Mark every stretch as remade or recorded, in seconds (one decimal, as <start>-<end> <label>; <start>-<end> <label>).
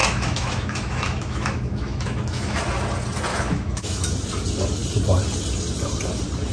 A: 0.0-2.6 remade; 2.6-3.3 recorded; 3.3-4.1 remade; 4.1-6.5 recorded